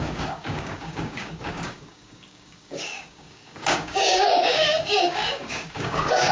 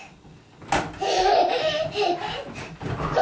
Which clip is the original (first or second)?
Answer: second